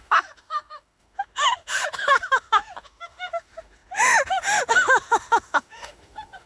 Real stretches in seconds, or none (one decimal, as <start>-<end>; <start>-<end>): none